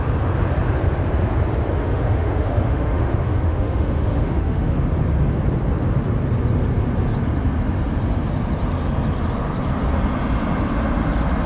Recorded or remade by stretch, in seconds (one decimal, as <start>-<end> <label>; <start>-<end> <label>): 0.0-1.7 recorded; 1.7-4.8 remade; 4.8-11.5 recorded